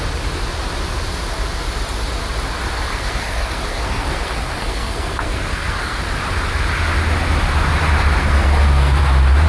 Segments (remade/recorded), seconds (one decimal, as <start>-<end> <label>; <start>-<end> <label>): 0.0-2.9 recorded; 2.9-6.0 remade; 6.0-8.2 recorded; 8.2-9.0 remade; 9.0-9.5 recorded